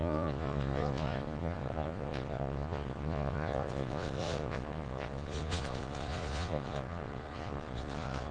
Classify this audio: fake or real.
fake